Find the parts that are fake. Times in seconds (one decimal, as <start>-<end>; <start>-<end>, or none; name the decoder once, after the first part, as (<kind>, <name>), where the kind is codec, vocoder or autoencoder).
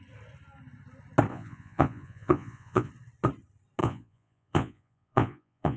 1.3-2.9 (vocoder, Vocos); 3.8-5.8